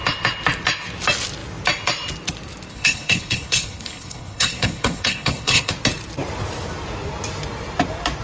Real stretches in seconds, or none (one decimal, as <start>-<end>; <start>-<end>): 0.0-2.7; 5.7-8.2